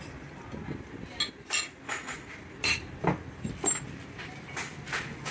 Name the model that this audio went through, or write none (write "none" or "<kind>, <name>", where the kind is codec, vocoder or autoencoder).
none